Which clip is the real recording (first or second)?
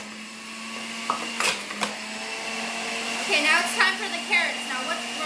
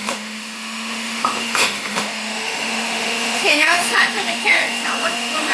first